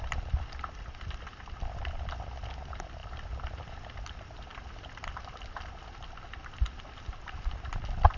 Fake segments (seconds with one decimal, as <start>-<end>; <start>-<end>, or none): 0.0-8.2